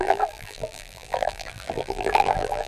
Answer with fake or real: fake